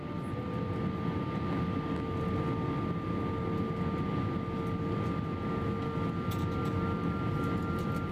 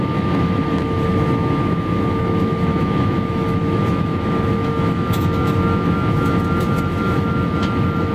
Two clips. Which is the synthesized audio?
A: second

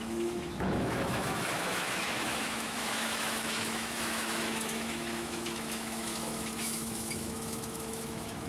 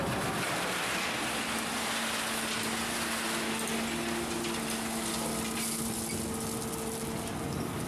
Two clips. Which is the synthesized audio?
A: first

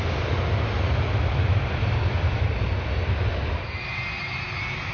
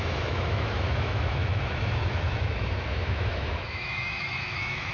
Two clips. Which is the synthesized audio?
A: second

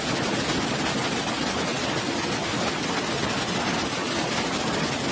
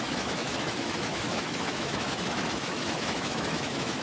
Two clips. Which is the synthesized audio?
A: second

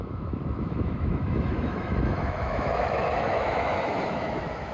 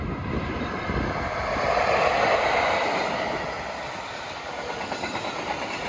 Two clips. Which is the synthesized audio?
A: first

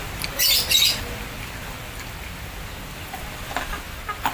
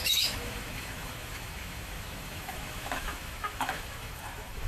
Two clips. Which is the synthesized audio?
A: second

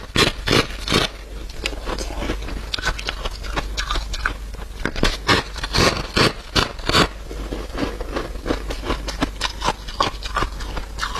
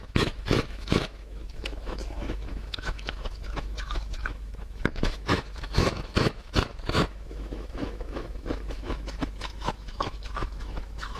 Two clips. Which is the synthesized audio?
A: second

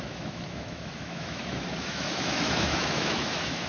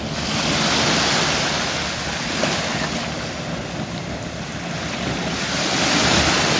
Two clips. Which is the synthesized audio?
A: first